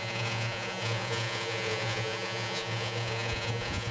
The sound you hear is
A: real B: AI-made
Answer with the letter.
B